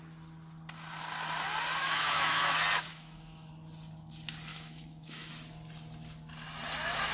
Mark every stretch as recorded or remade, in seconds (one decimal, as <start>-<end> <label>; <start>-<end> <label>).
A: 0.0-1.8 recorded; 1.8-2.5 remade; 2.5-2.9 recorded; 2.9-3.5 remade; 3.5-4.5 recorded; 4.5-5.3 remade; 5.3-7.1 recorded